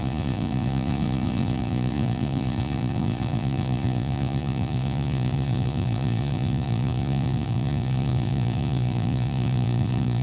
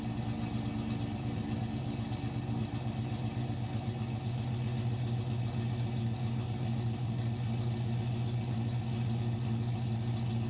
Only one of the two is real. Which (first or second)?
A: second